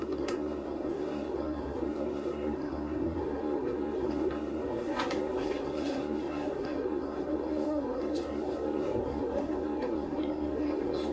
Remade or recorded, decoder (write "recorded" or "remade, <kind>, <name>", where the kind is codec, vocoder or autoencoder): remade, codec, SNAC